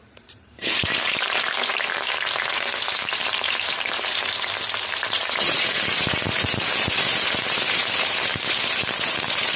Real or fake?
fake